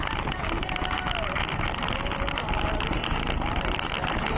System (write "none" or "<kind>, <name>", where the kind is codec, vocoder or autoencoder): none